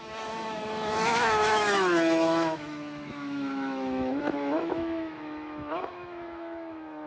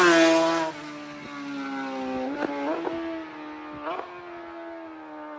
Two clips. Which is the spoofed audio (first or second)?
first